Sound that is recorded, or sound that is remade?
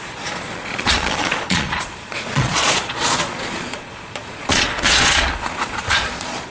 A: remade